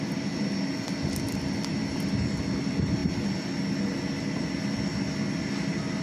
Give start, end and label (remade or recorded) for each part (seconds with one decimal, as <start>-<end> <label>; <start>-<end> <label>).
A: 0.0-6.0 recorded